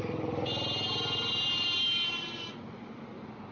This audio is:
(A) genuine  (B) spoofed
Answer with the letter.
A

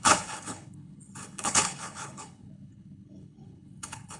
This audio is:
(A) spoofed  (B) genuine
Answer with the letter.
A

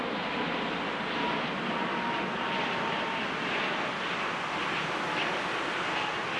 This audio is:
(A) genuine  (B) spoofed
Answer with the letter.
A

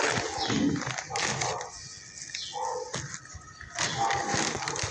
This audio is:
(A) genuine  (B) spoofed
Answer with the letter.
A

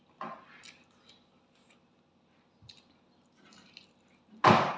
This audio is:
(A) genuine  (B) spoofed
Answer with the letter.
A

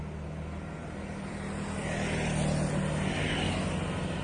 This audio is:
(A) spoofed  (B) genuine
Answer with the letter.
B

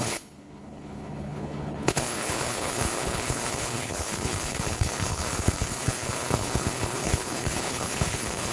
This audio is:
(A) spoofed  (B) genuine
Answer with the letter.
A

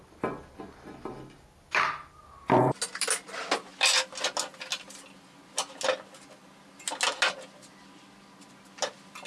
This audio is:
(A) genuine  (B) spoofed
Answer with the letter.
A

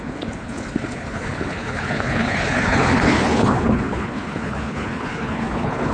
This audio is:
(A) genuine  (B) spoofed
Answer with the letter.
B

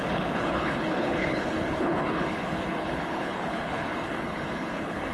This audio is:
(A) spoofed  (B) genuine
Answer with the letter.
A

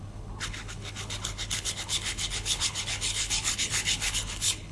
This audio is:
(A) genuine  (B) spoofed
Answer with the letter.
B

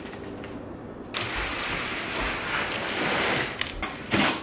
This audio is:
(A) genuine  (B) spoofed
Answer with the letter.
A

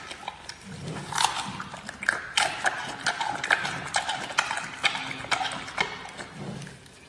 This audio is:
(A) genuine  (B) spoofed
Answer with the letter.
A